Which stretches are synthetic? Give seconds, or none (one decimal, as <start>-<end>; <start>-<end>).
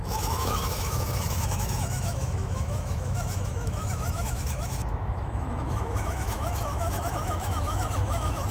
0.0-8.5